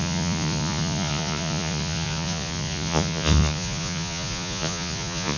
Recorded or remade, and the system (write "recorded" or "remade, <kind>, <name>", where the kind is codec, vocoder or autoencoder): remade, vocoder, Vocos